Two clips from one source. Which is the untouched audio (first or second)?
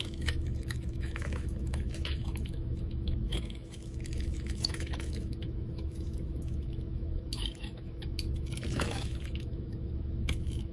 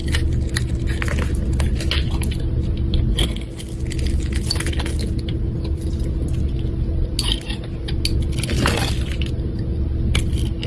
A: second